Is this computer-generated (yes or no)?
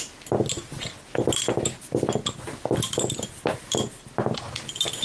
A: no